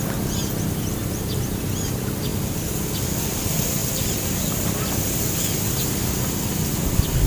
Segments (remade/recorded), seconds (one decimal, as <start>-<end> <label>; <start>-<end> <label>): 0.0-7.3 recorded